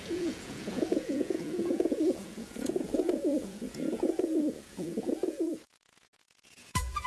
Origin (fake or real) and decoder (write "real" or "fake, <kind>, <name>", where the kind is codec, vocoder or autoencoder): fake, vocoder, Vocos